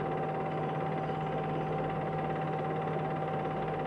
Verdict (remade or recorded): recorded